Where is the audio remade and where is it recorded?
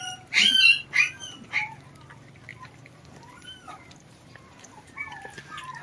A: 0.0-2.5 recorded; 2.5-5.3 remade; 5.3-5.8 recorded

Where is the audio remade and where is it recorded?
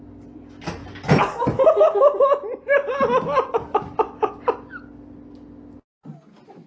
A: 0.0-6.7 recorded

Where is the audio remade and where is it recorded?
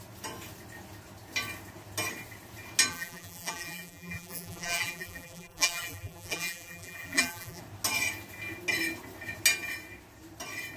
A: 0.0-2.9 recorded; 2.9-7.6 remade; 7.6-10.8 recorded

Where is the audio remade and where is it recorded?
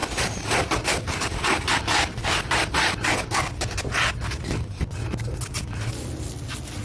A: 0.0-4.1 remade; 4.1-6.8 recorded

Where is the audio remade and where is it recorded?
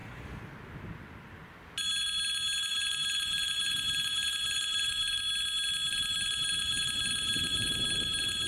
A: 0.0-0.5 remade; 0.5-2.7 recorded; 2.7-5.2 remade; 5.2-5.9 recorded; 5.9-8.5 remade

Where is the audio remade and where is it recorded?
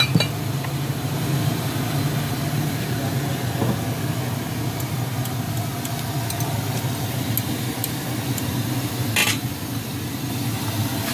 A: 0.0-9.2 recorded; 9.2-10.3 remade; 10.3-11.1 recorded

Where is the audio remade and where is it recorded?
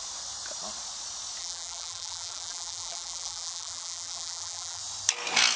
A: 0.0-1.4 recorded; 1.4-4.8 remade; 4.8-5.6 recorded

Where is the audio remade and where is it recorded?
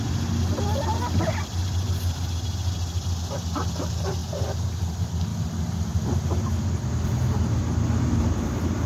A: 0.0-4.2 recorded; 4.2-4.8 remade; 4.8-8.9 recorded